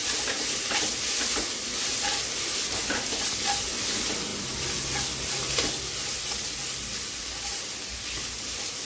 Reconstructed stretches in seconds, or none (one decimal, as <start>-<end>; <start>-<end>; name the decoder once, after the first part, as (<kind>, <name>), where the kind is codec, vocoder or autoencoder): none